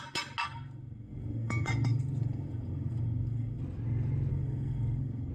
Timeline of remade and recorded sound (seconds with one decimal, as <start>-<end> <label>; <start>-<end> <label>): 0.0-0.4 recorded; 0.4-3.6 remade; 3.6-4.3 recorded; 4.3-5.3 remade